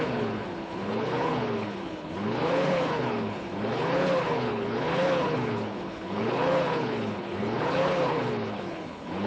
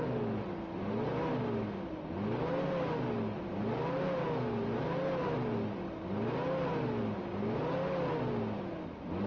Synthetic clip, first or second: first